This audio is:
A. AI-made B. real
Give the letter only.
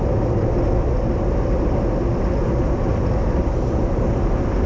B